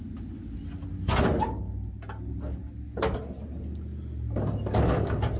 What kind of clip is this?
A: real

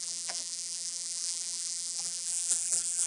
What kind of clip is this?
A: fake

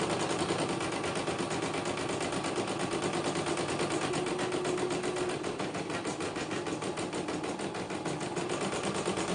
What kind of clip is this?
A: real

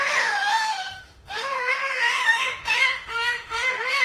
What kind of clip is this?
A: fake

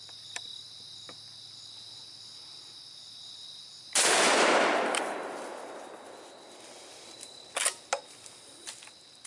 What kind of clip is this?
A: real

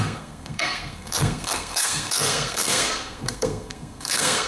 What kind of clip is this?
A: fake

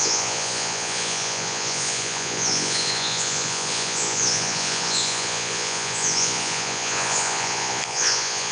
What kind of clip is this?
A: fake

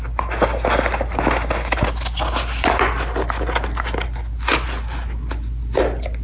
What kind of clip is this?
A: real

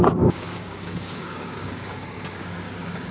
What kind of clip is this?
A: fake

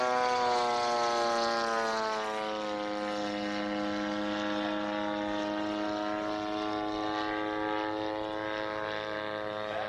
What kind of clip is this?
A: real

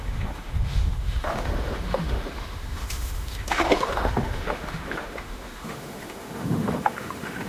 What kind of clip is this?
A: fake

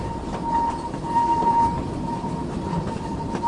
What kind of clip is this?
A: real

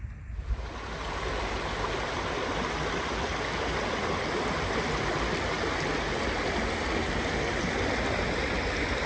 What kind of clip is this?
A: real